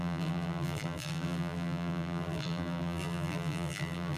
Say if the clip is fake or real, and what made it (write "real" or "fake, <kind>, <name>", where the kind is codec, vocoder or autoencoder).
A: fake, vocoder, BigVGAN v2